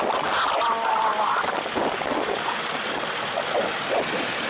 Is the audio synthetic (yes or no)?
no